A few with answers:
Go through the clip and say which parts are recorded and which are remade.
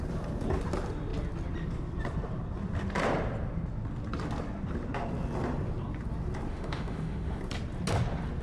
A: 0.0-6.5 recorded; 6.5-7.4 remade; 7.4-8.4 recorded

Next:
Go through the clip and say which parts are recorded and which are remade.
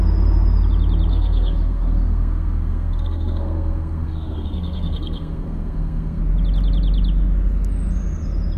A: 0.0-1.1 recorded; 1.1-6.2 remade; 6.2-8.6 recorded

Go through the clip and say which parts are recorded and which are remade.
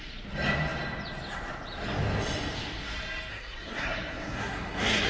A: 0.0-3.3 recorded; 3.3-5.1 remade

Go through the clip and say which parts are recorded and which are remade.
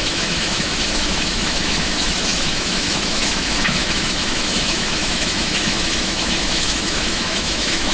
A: 0.0-7.9 remade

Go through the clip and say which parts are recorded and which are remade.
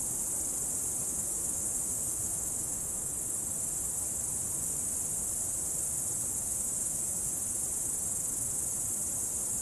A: 0.0-1.1 recorded; 1.1-3.1 remade; 3.1-6.2 recorded; 6.2-7.2 remade; 7.2-9.6 recorded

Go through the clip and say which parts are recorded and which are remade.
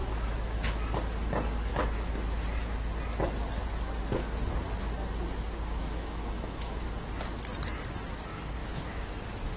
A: 0.0-0.8 remade; 0.8-5.8 recorded; 5.8-6.8 remade; 6.8-8.6 recorded; 8.6-9.1 remade; 9.1-9.6 recorded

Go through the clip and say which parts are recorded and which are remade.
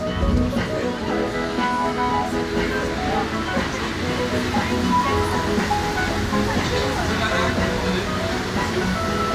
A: 0.0-1.3 recorded; 1.3-2.1 remade; 2.1-9.3 recorded